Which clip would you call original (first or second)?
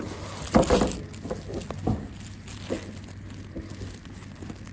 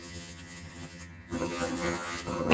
first